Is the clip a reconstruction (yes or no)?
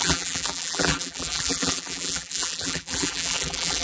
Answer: yes